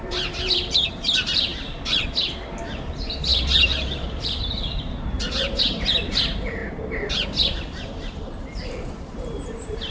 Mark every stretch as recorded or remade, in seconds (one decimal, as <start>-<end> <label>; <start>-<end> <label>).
0.0-1.5 remade; 1.5-2.6 recorded; 2.6-9.9 remade